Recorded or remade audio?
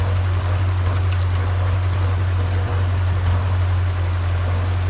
recorded